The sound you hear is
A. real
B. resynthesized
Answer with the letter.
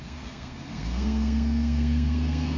B